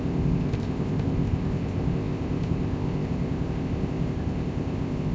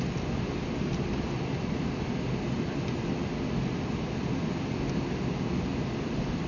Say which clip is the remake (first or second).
first